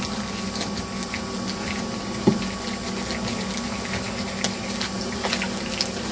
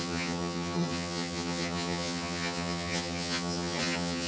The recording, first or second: first